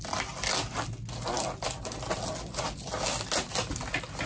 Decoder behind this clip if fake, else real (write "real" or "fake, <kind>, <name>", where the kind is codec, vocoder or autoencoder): real